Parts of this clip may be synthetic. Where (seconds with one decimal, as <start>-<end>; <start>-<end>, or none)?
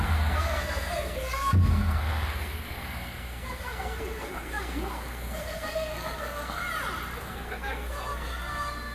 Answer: 0.0-6.6; 7.2-8.9